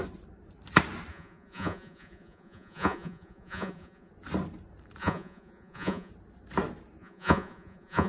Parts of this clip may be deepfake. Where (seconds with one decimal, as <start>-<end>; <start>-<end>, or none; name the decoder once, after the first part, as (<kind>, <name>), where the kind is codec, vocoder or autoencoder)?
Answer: 1.1-4.1 (vocoder, Vocos); 5.0-6.1; 7.0-8.1